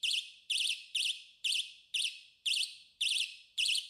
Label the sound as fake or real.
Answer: fake